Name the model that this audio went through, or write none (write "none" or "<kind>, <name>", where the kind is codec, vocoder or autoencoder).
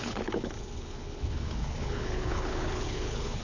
codec, HILCodec